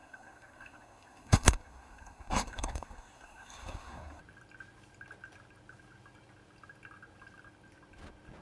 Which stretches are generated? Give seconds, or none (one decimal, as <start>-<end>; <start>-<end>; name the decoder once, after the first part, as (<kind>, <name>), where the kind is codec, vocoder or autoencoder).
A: 0.0-4.2 (codec, SNAC)